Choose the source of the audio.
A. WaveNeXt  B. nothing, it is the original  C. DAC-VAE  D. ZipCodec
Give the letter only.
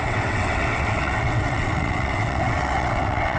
A